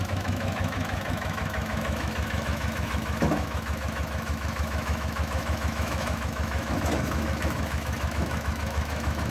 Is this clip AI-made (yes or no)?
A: yes